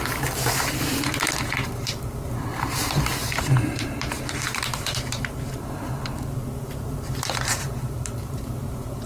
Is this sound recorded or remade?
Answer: remade